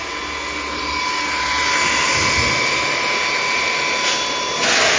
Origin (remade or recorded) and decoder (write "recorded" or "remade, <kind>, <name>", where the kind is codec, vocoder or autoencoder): recorded